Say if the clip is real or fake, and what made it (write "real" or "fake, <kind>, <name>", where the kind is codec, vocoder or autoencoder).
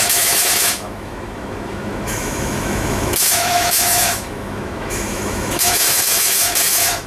fake, autoencoder, DAC-VAE